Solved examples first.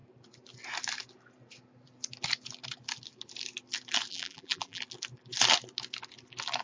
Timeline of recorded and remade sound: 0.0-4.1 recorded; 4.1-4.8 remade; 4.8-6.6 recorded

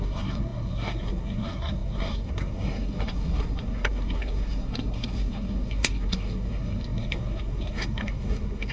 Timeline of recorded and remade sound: 0.0-8.7 remade

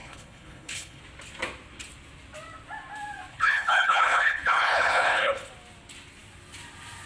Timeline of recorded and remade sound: 0.0-1.0 remade; 1.0-3.3 recorded; 3.3-5.5 remade; 5.5-7.1 recorded

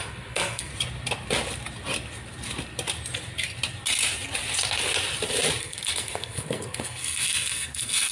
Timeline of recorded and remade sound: 0.0-0.7 remade; 0.7-5.6 recorded; 5.6-8.1 remade

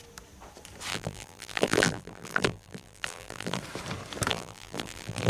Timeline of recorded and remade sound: 0.0-0.9 recorded; 0.9-3.6 remade; 3.6-4.3 recorded; 4.3-5.3 remade

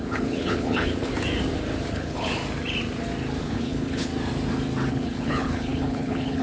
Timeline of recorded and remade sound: 0.0-1.1 remade; 1.1-1.9 recorded; 1.9-2.4 remade; 2.4-3.4 recorded; 3.4-4.1 remade; 4.1-4.9 recorded; 4.9-6.4 remade

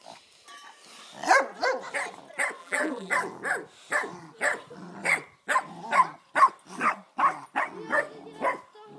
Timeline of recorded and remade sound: 0.0-2.6 recorded; 2.6-3.1 remade; 3.1-9.0 recorded

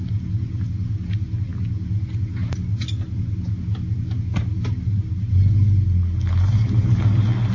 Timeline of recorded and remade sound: 0.0-7.5 recorded